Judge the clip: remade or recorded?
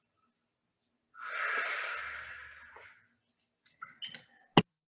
recorded